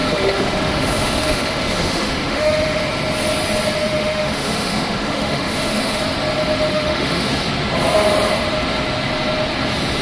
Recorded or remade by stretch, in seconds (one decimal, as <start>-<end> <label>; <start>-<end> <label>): 0.0-2.8 remade; 2.8-3.8 recorded; 3.8-6.0 remade; 6.0-6.7 recorded; 6.7-7.3 remade; 7.3-10.0 recorded